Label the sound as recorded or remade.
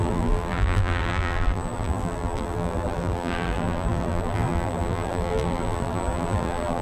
remade